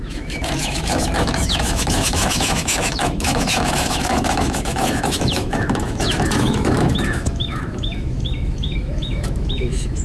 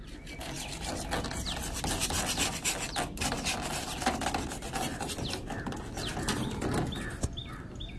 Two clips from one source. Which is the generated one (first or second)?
first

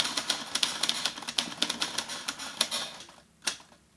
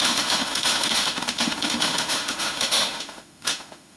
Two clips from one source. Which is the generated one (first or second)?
second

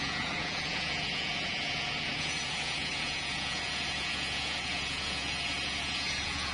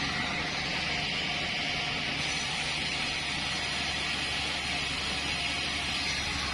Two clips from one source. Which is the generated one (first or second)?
first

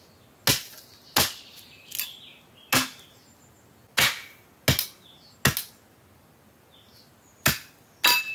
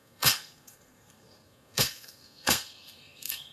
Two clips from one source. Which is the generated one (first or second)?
second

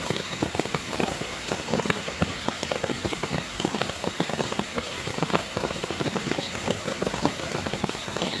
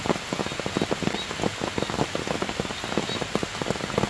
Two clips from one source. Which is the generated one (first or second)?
first